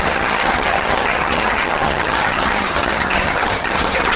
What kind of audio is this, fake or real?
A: fake